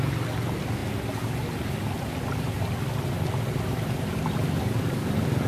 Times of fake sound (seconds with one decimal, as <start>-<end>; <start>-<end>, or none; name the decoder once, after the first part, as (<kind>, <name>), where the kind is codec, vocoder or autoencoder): 4.6-5.1 (codec, DAC)